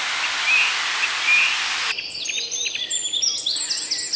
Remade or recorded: recorded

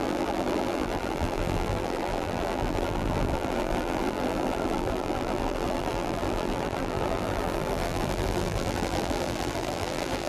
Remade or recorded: remade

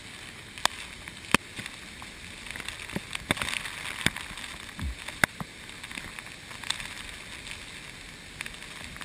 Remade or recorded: recorded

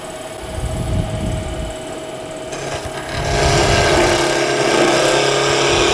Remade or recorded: recorded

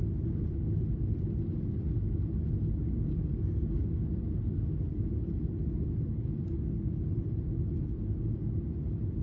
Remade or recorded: recorded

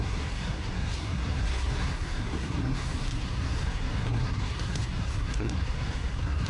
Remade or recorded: remade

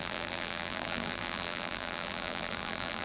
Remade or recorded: remade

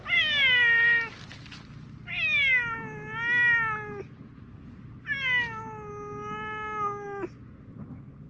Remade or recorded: recorded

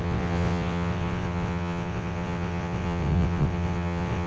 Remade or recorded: remade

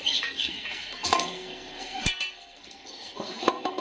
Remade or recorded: remade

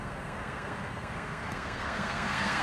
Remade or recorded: remade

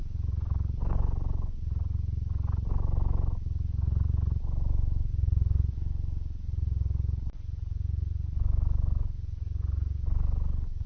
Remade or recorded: recorded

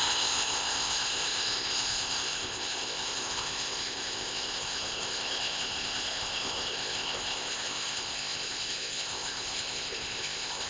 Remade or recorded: remade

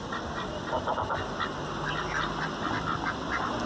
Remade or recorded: recorded